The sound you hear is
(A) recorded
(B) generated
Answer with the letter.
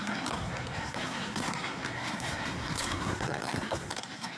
B